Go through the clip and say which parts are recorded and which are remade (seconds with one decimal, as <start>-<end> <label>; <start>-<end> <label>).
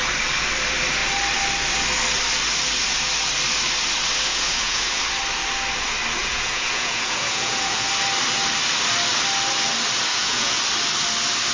0.0-4.3 recorded; 4.3-5.0 remade; 5.0-6.2 recorded; 6.2-7.9 remade; 7.9-10.1 recorded; 10.1-10.6 remade; 10.6-11.5 recorded